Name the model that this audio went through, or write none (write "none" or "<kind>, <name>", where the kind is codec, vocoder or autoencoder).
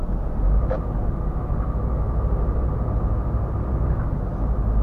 none